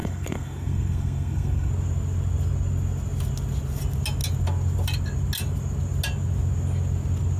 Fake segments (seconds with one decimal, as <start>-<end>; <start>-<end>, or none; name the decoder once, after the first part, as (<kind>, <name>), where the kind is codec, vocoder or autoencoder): 0.0-1.7 (codec, SNAC)